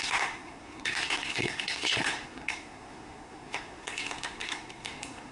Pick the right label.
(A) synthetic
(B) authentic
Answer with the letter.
A